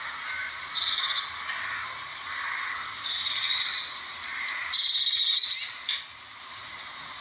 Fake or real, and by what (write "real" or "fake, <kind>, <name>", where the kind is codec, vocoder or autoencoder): real